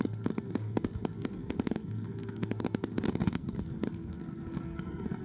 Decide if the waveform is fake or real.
fake